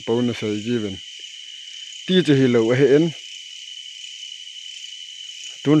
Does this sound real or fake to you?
real